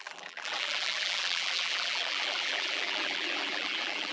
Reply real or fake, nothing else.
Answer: fake